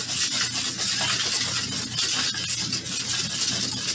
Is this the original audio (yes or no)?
yes